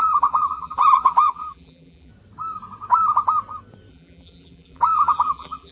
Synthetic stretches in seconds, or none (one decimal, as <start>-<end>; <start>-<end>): 0.0-2.1; 3.9-5.7